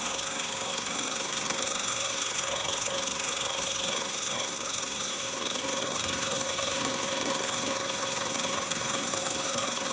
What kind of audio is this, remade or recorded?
remade